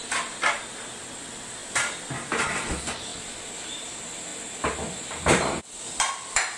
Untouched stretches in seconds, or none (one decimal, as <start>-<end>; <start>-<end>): 0.0-6.6